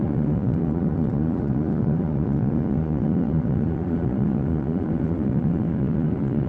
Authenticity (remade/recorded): remade